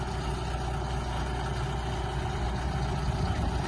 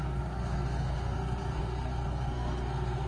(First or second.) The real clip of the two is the first